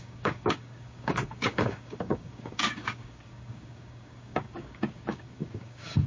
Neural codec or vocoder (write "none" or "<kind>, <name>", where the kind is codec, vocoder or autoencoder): codec, DAC